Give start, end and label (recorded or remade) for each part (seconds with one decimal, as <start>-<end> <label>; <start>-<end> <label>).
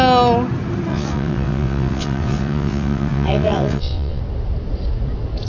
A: 0.0-0.9 recorded; 0.9-4.2 remade; 4.2-5.5 recorded